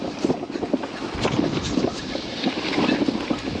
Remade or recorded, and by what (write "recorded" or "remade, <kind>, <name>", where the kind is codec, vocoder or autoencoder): recorded